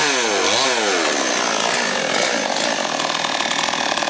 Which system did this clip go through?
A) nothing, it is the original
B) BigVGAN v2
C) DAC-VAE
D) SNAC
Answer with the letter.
A